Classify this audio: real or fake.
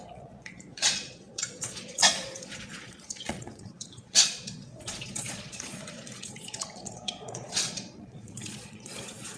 fake